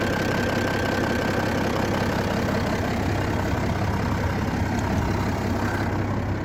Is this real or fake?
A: real